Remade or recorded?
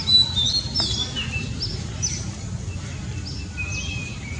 recorded